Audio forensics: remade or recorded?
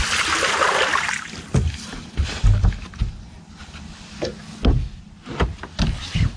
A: recorded